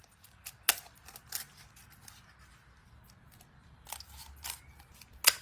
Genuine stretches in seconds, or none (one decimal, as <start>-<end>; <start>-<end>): 0.0-5.4